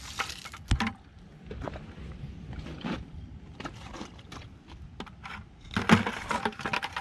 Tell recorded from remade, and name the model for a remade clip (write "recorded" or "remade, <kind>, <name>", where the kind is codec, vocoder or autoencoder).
recorded